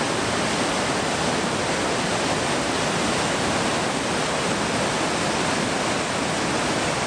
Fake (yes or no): no